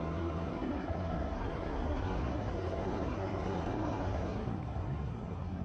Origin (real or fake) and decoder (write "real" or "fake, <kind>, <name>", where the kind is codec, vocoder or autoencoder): fake, codec, SNAC